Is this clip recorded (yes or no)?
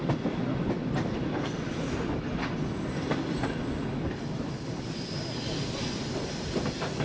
yes